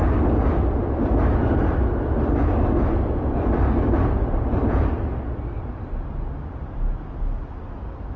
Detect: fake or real real